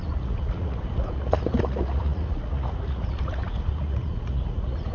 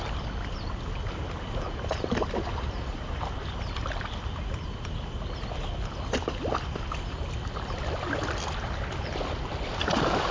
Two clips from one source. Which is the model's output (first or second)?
first